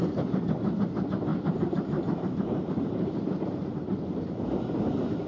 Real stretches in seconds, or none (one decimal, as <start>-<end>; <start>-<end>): 0.5-1.3; 4.5-5.3